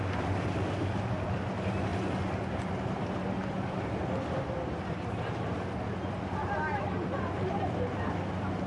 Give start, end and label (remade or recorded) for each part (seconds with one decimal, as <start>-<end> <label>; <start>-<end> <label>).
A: 0.0-8.7 recorded